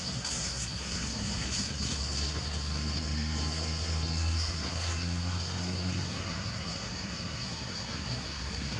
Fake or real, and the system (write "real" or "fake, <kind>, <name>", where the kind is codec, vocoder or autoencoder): fake, codec, SNAC